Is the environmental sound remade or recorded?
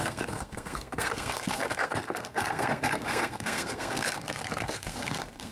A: remade